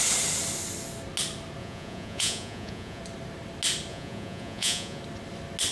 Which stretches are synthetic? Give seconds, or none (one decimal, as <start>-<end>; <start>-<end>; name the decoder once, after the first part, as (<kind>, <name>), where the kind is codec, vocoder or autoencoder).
1.6-3.0 (vocoder, Vocos); 3.9-5.0